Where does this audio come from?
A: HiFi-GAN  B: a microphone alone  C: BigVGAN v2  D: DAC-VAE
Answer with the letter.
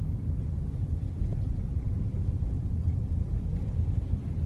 B